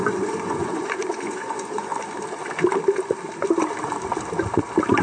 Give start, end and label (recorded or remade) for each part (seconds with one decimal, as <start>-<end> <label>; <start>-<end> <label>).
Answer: 0.0-1.9 remade; 1.9-5.0 recorded

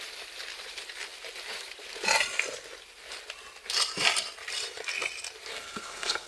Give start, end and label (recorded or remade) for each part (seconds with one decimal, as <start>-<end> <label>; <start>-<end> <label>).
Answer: 0.0-5.5 recorded; 5.5-6.3 remade

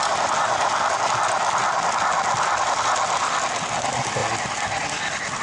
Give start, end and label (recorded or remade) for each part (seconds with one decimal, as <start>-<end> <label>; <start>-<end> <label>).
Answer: 0.0-4.2 recorded; 4.2-4.8 remade; 4.8-5.4 recorded

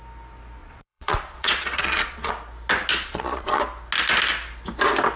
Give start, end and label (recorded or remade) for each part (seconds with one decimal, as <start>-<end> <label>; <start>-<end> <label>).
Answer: 0.0-0.6 recorded; 0.6-2.3 remade; 2.3-2.9 recorded; 2.9-3.6 remade; 3.6-5.2 recorded

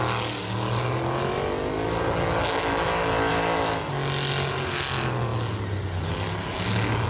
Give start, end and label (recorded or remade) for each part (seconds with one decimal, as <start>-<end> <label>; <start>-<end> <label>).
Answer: 0.0-7.1 recorded

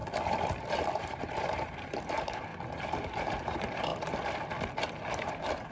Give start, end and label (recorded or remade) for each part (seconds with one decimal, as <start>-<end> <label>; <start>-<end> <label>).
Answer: 0.0-0.7 recorded; 0.7-3.9 remade; 3.9-4.9 recorded; 4.9-5.7 remade

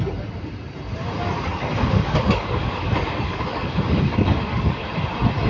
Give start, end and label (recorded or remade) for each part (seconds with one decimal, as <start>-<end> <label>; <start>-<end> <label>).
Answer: 0.0-1.5 recorded; 1.5-4.8 remade; 4.8-5.5 recorded

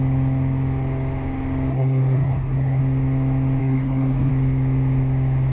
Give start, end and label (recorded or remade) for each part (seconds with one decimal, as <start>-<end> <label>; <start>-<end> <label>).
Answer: 0.0-1.7 recorded; 1.7-2.8 remade; 2.8-3.6 recorded; 3.6-4.3 remade; 4.3-5.5 recorded